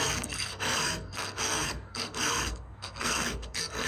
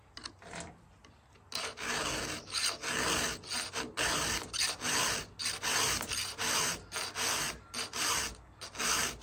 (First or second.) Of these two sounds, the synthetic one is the first